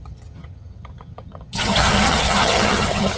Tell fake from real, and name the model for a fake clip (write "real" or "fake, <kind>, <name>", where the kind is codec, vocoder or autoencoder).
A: fake, vocoder, HiFi-GAN